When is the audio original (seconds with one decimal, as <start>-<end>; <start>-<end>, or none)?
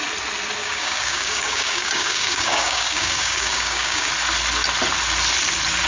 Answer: 0.0-0.6; 4.1-5.9